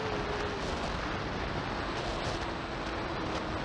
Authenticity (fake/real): real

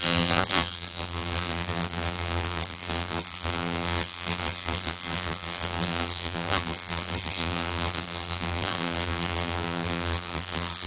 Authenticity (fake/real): fake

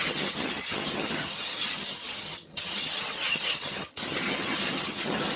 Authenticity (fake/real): fake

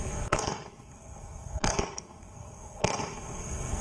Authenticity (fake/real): fake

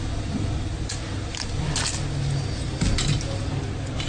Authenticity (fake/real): real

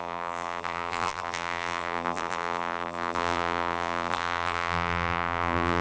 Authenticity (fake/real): fake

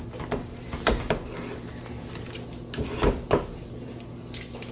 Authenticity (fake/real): real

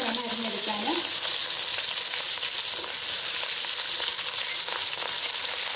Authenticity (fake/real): real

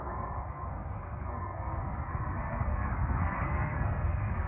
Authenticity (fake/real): fake